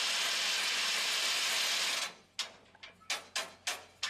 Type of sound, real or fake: real